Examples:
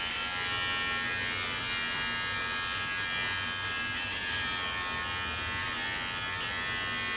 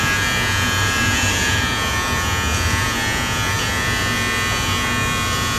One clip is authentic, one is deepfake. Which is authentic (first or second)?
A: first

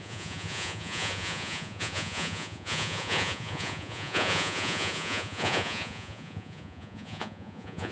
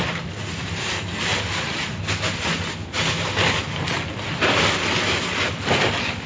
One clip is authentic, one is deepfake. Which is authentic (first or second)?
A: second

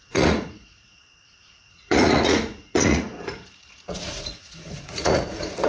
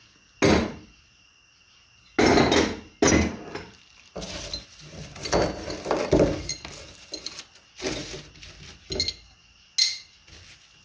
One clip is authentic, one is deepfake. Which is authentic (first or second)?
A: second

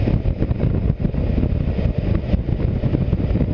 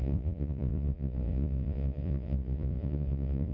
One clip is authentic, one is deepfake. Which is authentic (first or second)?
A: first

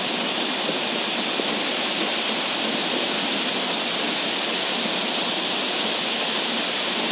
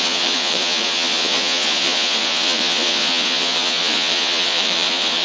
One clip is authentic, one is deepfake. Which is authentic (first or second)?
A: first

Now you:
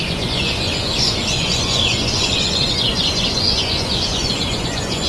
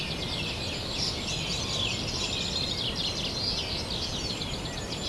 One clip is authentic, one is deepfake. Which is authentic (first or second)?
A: second